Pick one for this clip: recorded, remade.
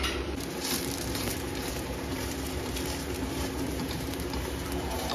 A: remade